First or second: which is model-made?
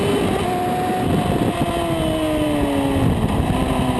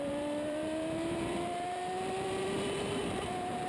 second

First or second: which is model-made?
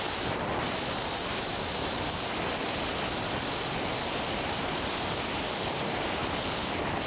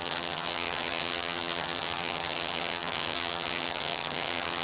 second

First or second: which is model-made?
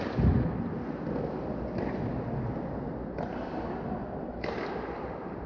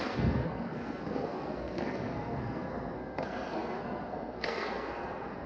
second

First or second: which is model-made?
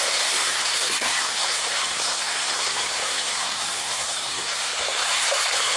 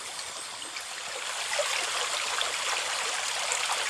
first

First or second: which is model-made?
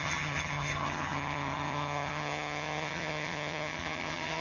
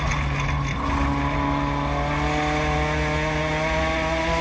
first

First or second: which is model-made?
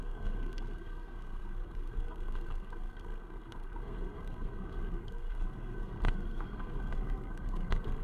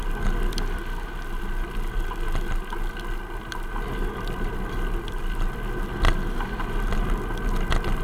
first